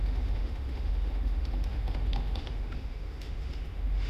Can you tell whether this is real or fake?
fake